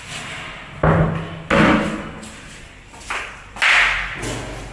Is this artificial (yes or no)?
no